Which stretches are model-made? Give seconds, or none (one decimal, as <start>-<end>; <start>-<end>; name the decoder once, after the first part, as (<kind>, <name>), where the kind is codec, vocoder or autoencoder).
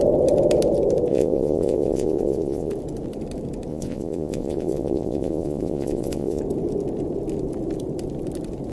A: 1.1-2.7 (vocoder, Vocos); 3.7-6.4